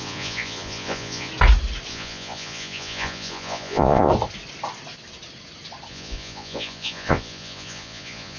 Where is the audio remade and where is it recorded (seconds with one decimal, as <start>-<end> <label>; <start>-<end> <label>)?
0.0-1.3 remade; 1.3-1.9 recorded; 1.9-4.1 remade; 4.1-5.9 recorded; 5.9-8.4 remade